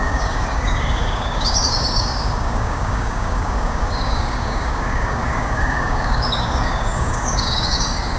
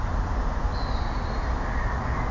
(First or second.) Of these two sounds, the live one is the second